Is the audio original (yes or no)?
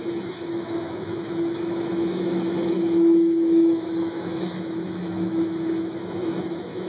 no